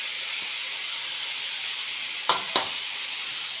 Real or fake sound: real